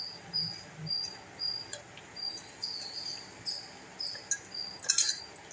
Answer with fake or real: real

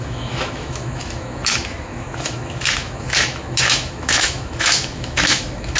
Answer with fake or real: fake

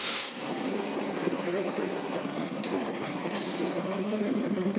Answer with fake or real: fake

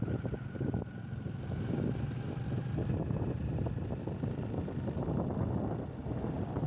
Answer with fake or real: real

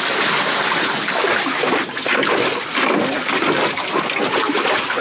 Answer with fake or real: real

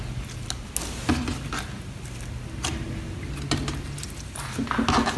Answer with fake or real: real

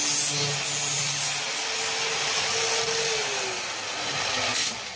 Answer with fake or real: real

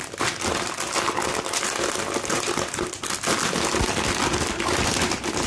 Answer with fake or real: real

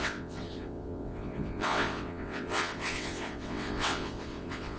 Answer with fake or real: fake